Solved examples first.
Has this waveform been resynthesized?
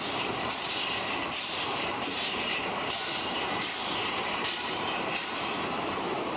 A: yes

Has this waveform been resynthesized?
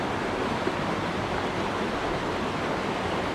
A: no